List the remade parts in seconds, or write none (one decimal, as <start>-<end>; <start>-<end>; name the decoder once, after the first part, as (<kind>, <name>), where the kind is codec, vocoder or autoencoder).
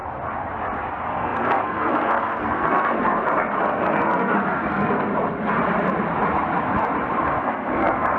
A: 0.9-5.1 (codec, SNAC); 7.2-8.2